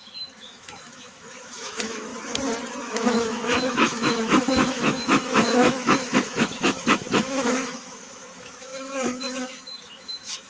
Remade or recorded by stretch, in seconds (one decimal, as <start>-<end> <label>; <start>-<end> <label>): 0.0-2.1 remade; 2.1-2.8 recorded; 2.8-10.5 remade